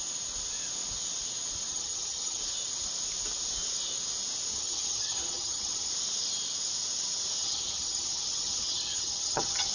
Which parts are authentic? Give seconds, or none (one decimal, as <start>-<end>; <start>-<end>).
0.0-1.7; 2.4-4.5; 5.9-7.4